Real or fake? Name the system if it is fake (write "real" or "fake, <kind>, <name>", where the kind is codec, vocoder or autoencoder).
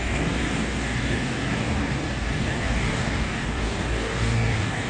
fake, codec, DAC